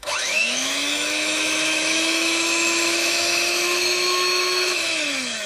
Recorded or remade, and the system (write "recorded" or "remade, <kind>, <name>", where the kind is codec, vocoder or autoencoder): remade, autoencoder, DAC-VAE